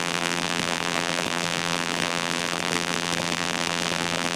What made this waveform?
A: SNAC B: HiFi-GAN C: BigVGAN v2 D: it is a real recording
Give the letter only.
C